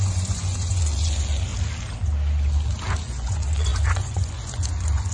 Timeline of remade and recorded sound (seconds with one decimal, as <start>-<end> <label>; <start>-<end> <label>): 0.0-1.5 remade; 1.5-3.0 recorded; 3.0-5.1 remade